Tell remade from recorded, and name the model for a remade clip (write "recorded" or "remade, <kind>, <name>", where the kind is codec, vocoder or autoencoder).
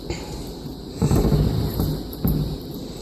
remade, vocoder, BigVGAN v2